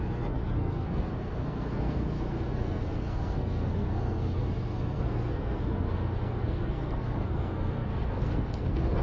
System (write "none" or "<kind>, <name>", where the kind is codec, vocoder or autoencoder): codec, SNAC